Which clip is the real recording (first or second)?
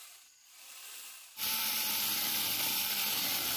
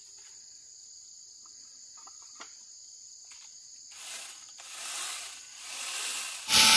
second